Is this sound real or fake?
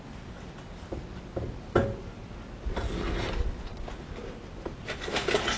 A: real